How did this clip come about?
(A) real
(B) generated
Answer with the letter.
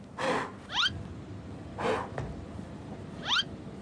A